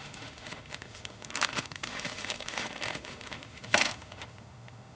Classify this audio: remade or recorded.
remade